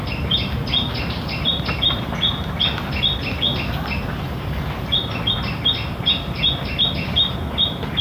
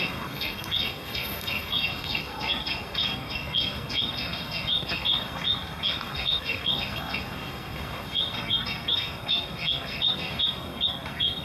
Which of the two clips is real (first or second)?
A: first